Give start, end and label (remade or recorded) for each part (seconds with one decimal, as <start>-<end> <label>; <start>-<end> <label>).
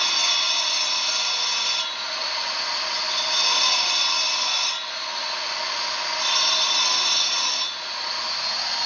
0.0-8.9 recorded